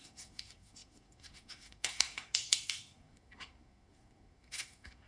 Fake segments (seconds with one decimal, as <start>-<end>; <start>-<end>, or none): 0.0-5.1